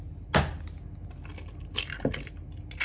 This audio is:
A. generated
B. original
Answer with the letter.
B